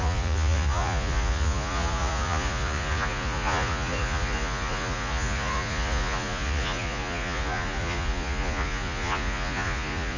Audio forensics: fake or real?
fake